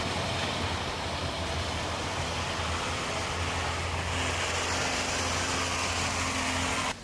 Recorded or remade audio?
recorded